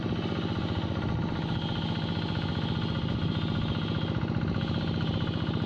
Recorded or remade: recorded